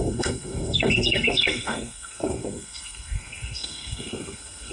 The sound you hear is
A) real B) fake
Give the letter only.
B